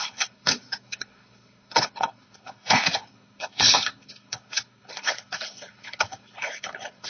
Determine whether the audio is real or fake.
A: fake